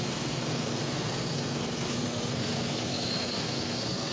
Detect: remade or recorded remade